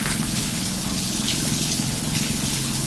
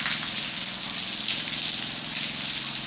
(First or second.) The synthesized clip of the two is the first